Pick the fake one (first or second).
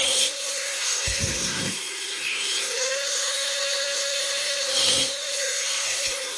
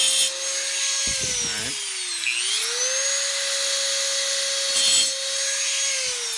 first